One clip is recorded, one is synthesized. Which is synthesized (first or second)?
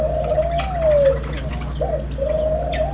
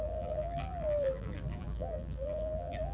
second